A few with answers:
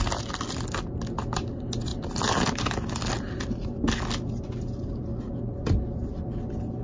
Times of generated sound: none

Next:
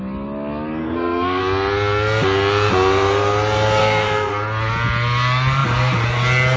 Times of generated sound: 0.8-1.4 (codec, SNAC); 3.8-4.3